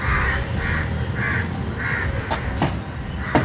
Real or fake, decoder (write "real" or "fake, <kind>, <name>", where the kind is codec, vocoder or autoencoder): real